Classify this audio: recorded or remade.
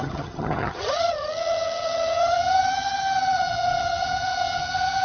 remade